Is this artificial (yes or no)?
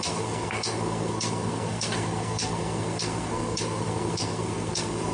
yes